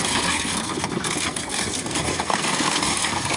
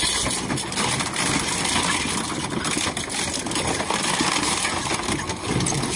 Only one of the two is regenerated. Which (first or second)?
first